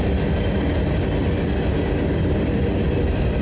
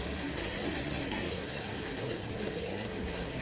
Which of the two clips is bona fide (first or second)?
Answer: first